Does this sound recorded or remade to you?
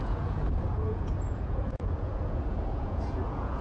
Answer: remade